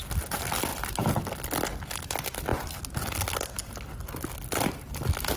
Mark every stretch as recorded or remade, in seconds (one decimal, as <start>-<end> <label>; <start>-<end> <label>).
0.0-5.4 recorded